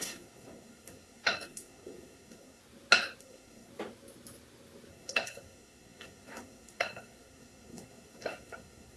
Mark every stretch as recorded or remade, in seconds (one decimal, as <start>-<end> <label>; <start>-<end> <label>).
0.0-2.6 remade; 2.6-3.2 recorded; 3.2-3.7 remade; 3.7-4.9 recorded; 4.9-9.0 remade